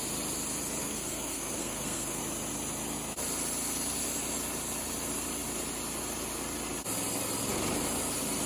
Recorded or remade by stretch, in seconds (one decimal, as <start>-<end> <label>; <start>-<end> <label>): 0.0-0.8 recorded; 0.8-2.2 remade; 2.2-8.5 recorded